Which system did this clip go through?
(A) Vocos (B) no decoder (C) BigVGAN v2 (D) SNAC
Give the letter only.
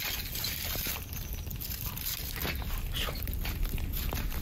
B